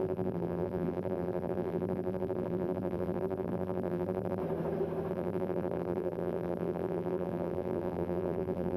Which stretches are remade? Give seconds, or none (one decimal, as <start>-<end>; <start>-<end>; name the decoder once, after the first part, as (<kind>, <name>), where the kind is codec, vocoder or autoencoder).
0.0-4.4 (vocoder, BigVGAN v2); 5.1-8.8